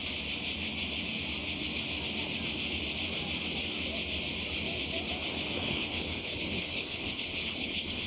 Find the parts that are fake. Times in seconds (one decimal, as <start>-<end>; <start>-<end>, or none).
5.6-8.1